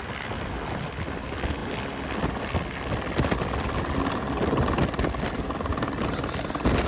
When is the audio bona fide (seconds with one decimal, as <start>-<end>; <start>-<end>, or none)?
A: 0.0-6.9